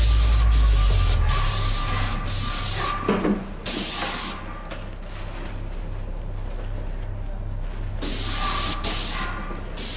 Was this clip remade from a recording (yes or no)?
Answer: no